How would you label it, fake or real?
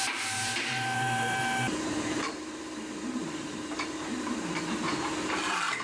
fake